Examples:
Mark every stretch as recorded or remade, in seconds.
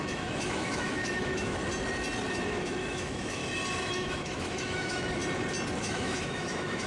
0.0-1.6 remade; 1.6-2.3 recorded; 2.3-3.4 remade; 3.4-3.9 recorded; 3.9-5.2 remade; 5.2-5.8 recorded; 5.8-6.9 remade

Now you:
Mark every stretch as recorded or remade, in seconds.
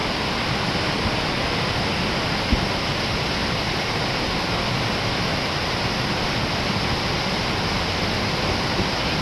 0.0-9.2 recorded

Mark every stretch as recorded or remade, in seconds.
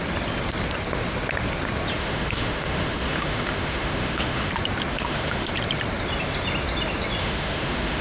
0.0-2.0 recorded; 2.0-4.5 remade; 4.5-4.9 recorded; 4.9-5.5 remade; 5.5-7.2 recorded; 7.2-8.0 remade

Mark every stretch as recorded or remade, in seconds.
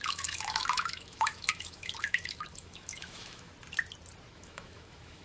0.0-3.5 remade; 3.5-4.3 recorded; 4.3-5.2 remade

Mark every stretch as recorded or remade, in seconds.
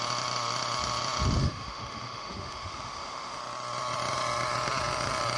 0.0-1.4 recorded; 1.4-3.4 remade; 3.4-5.4 recorded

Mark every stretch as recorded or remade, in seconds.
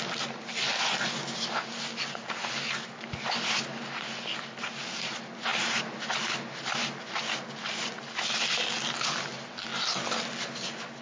0.0-11.0 recorded